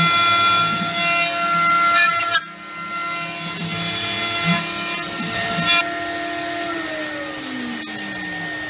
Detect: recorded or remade recorded